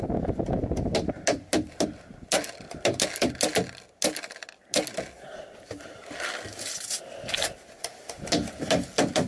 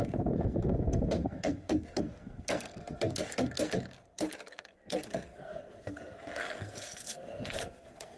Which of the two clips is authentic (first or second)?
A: first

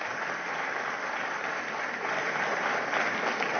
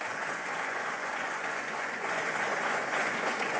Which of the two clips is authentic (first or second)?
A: first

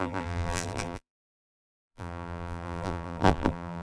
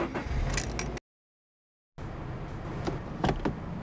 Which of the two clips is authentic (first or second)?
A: second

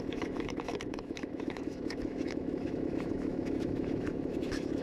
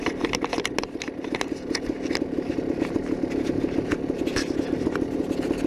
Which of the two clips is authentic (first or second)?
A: second